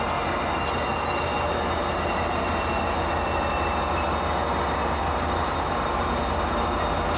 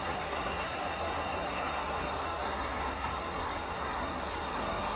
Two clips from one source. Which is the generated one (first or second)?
second